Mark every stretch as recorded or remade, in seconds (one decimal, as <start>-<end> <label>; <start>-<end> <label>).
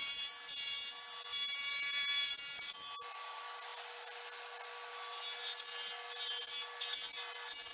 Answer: 0.0-1.3 recorded; 1.3-2.4 remade; 2.4-7.7 recorded